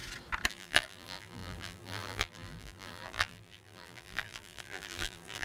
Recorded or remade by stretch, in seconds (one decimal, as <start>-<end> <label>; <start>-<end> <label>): 0.0-0.5 recorded; 0.5-5.4 remade